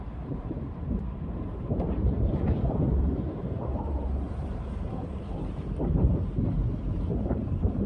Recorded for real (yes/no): no